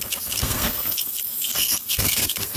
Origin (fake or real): fake